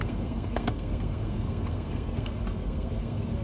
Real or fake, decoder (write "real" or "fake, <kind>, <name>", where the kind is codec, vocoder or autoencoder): fake, codec, SNAC